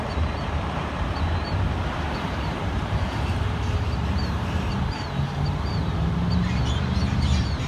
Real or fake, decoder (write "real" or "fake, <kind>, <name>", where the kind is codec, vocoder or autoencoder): fake, vocoder, BigVGAN v2